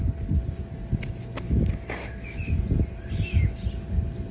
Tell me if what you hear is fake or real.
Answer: real